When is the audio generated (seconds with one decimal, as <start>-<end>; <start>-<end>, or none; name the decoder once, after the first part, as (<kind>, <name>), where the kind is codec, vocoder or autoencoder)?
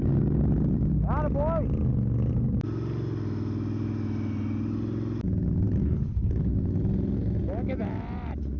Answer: 5.8-6.3 (codec, HILCodec)